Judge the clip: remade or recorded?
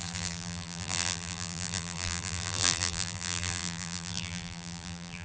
remade